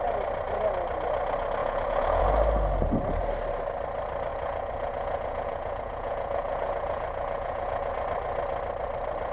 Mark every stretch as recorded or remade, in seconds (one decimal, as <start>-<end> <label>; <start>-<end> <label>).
0.0-1.6 recorded; 1.6-2.2 remade; 2.2-4.3 recorded; 4.3-7.9 remade; 7.9-9.3 recorded